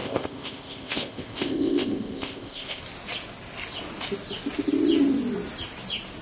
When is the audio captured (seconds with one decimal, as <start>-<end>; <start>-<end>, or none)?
2.8-6.2